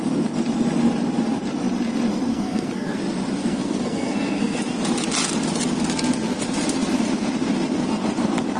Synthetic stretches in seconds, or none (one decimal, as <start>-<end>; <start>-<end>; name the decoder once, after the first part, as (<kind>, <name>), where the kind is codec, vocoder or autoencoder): 2.3-3.0 (codec, SNAC); 3.4-4.6